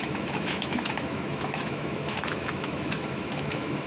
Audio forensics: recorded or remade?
remade